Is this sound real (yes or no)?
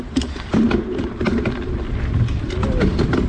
no